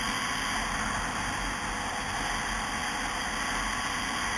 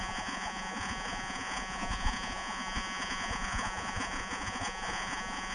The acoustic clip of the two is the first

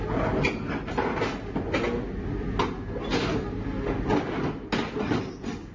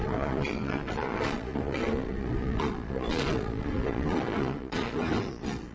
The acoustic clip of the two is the first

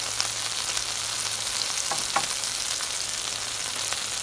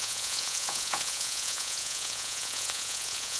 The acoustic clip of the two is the first